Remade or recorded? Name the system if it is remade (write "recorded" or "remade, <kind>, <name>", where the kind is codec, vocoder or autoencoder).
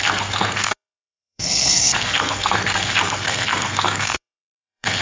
remade, codec, SNAC